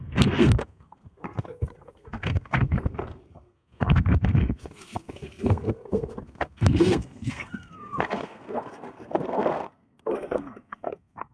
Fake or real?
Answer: fake